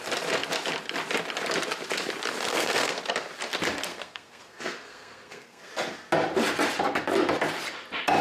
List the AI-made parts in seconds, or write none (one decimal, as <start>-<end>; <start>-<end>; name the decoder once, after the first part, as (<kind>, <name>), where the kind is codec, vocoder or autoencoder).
2.5-3.0 (codec, SNAC); 3.9-5.7